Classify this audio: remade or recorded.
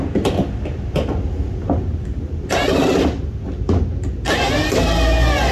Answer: recorded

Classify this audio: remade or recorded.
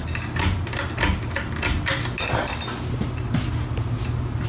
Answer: recorded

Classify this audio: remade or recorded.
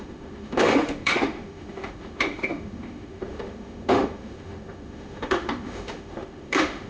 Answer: remade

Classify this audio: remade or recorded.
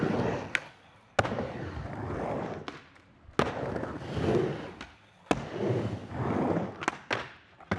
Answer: recorded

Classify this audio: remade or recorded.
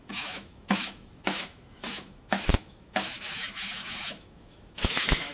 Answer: remade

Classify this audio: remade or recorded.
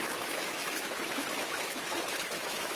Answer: remade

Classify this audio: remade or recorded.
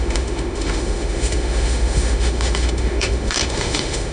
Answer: remade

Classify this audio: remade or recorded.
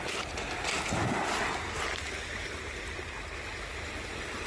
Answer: recorded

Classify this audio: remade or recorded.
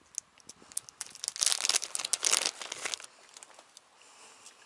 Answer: recorded